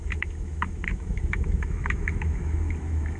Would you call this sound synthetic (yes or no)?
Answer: yes